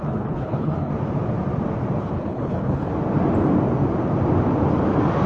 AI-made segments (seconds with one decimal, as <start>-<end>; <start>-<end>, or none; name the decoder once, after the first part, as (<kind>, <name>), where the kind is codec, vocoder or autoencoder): 0.0-0.9 (codec, HILCodec); 2.0-2.9